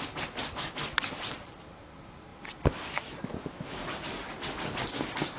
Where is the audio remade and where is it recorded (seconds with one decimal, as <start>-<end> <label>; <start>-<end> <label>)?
0.0-5.4 recorded